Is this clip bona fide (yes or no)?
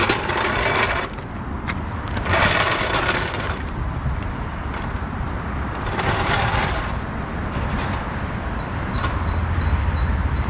no